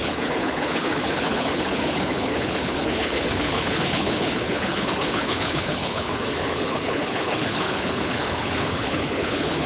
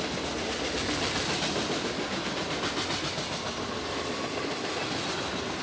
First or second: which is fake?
first